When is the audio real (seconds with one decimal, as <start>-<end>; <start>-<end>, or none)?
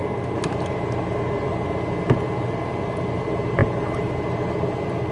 0.0-5.1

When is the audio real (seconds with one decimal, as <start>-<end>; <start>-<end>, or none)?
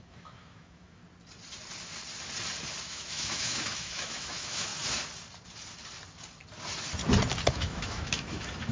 1.0-2.8; 4.7-7.5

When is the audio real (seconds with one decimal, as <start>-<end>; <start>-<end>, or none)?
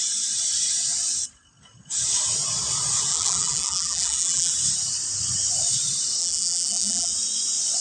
0.0-3.1; 4.5-6.2; 7.1-7.8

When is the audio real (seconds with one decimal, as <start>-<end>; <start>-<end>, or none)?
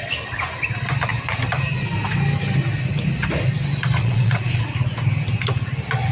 0.0-4.0; 4.5-6.1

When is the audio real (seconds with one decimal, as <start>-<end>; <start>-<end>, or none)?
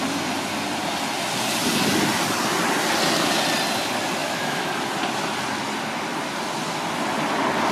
0.0-4.2; 4.7-7.7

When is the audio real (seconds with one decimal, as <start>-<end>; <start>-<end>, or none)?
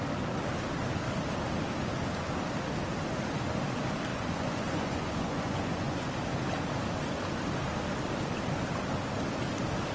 0.0-4.1; 6.1-9.9